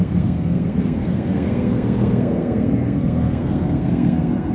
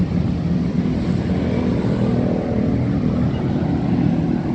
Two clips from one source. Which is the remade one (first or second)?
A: first